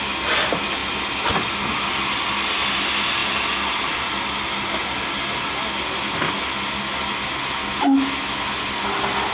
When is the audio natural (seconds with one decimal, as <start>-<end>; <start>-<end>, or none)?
0.0-9.3